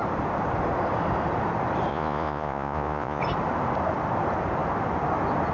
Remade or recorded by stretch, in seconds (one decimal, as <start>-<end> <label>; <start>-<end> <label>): 0.0-1.9 recorded; 1.9-3.2 remade; 3.2-5.5 recorded